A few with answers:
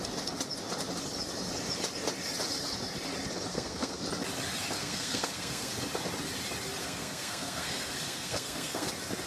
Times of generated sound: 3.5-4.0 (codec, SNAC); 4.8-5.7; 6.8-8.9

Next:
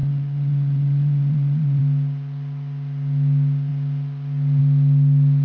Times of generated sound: 0.0-1.8 (vocoder, Vocos)

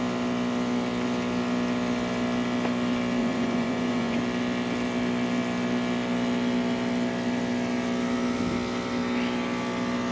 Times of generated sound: 3.2-4.2 (vocoder, Vocos)

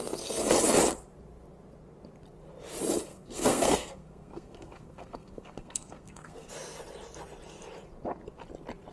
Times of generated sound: 3.1-6.5 (codec, SNAC)

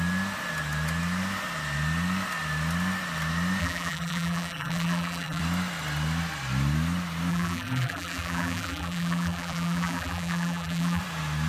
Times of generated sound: 3.6-5.4 (vocoder, BigVGAN v2); 7.3-11.0